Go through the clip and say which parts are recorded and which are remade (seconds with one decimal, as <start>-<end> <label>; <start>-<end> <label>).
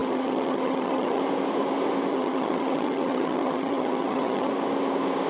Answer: 0.0-1.2 remade; 1.2-2.1 recorded; 2.1-4.5 remade; 4.5-5.3 recorded